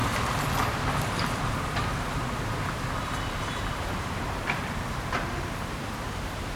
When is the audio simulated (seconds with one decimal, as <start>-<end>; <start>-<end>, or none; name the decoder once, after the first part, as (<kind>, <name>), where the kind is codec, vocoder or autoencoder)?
0.9-6.6 (vocoder, BigVGAN v2)